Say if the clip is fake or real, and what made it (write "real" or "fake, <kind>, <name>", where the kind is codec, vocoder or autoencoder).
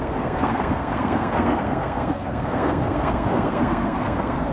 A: fake, codec, SNAC